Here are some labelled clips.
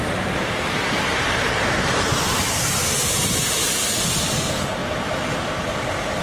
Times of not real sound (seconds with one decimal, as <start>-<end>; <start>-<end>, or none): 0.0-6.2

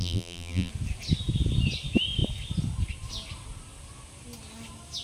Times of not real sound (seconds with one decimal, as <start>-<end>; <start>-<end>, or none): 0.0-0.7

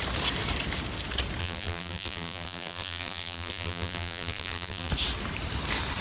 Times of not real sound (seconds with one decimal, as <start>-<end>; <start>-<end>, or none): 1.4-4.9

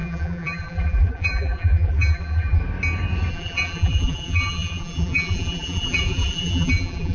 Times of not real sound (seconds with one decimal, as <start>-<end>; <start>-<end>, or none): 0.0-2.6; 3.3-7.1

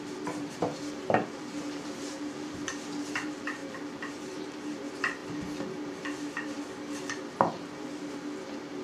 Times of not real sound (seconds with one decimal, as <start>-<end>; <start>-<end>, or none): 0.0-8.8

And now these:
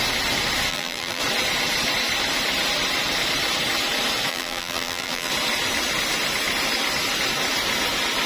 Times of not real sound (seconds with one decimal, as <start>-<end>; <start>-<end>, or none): 0.7-1.2; 4.3-5.3

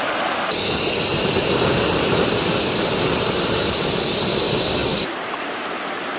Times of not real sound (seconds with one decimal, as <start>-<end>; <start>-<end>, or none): 1.1-3.7; 4.8-5.7